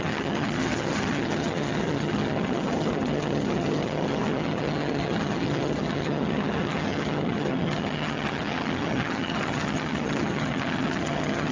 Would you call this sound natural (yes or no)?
no